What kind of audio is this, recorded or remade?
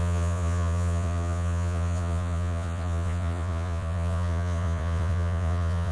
remade